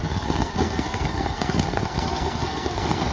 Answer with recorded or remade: remade